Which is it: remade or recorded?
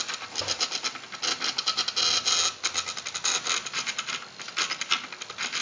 recorded